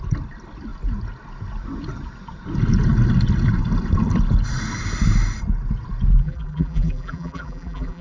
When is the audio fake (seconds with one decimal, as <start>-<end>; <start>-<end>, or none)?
6.1-8.0